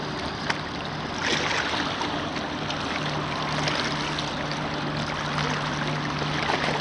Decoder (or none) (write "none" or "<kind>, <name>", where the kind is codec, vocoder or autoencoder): none